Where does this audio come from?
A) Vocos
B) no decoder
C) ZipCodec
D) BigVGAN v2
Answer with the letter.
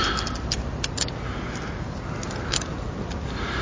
B